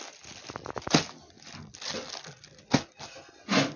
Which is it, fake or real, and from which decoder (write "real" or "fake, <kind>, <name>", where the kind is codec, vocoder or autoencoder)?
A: real